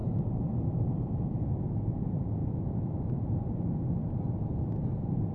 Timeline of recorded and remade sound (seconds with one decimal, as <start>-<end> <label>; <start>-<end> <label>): 0.0-2.4 recorded; 2.4-3.5 remade; 3.5-5.3 recorded